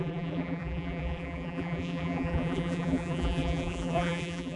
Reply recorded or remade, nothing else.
remade